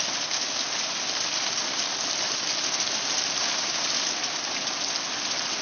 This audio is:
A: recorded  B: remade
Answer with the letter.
A